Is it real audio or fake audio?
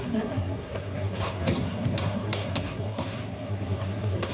fake